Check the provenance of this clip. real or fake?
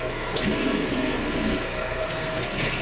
fake